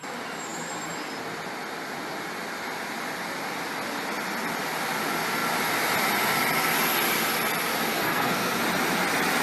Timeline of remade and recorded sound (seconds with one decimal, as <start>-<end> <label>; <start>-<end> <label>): 0.0-7.9 recorded; 7.9-8.6 remade; 8.6-9.4 recorded